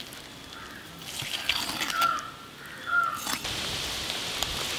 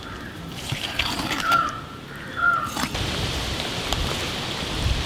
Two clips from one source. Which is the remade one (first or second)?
second